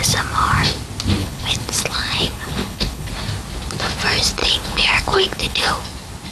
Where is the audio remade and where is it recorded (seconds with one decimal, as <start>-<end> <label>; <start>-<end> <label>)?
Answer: 0.0-1.2 recorded; 1.2-3.1 remade; 3.1-4.4 recorded; 4.4-5.7 remade; 5.7-6.3 recorded